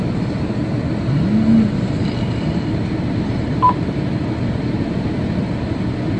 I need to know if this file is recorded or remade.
recorded